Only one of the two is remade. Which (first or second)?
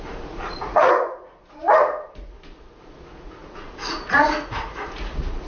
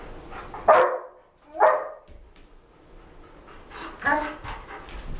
first